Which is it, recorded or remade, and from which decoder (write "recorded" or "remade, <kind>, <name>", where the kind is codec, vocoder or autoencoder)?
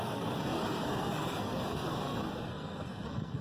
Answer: remade, codec, SNAC